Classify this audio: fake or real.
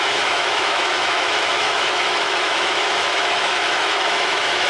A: fake